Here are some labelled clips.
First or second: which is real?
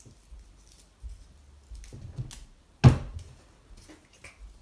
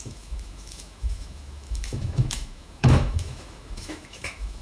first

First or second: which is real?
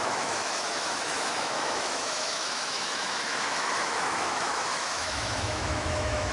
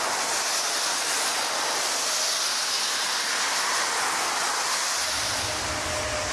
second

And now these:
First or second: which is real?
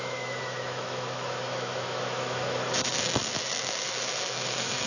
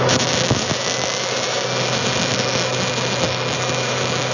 second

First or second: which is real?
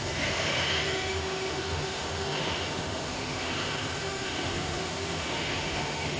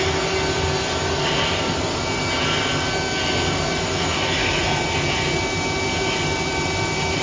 second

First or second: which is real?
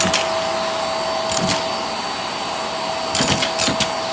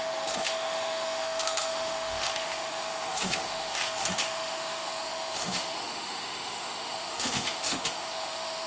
first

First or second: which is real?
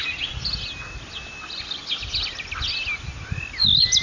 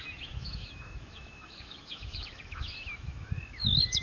first